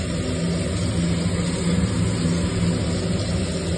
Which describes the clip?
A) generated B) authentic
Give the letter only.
B